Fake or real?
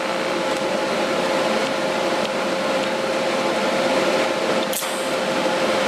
real